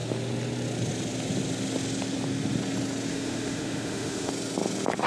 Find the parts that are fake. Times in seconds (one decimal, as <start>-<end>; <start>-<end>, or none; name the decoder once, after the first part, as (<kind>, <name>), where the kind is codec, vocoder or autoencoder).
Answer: 3.1-4.3 (autoencoder, DAC-VAE)